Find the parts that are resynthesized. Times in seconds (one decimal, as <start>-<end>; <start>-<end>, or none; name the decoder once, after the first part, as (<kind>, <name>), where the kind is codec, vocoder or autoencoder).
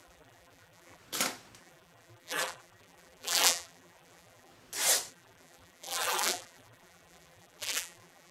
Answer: 0.0-1.0 (vocoder, BigVGAN v2); 1.6-4.5; 5.1-8.3